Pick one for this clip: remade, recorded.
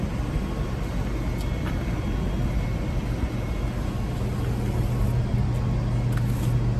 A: recorded